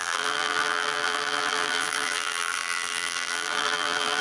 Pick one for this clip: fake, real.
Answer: fake